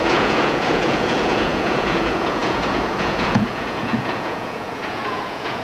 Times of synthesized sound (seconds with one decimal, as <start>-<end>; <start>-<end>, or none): 0.0-5.6